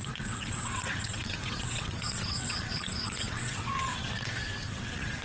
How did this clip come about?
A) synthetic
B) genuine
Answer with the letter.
A